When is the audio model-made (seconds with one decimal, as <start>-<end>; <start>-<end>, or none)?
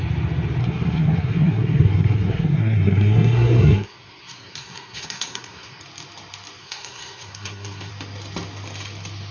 0.6-5.8; 6.6-7.9